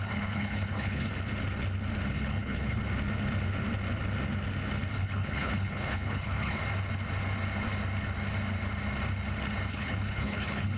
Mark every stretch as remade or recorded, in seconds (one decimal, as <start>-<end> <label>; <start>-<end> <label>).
0.0-1.1 remade; 1.1-2.1 recorded; 2.1-2.8 remade; 2.8-4.9 recorded; 4.9-6.6 remade; 6.6-9.7 recorded; 9.7-10.8 remade